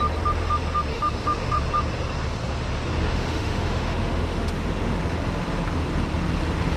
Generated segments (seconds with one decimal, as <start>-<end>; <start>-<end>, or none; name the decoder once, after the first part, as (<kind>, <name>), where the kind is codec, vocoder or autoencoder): 0.9-1.6 (autoencoder, DAC-VAE); 3.1-5.0